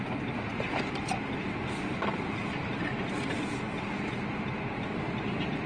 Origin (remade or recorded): recorded